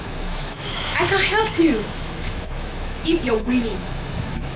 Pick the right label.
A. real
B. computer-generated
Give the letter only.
B